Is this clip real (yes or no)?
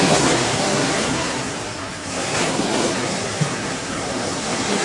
no